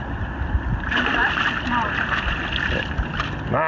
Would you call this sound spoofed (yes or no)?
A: no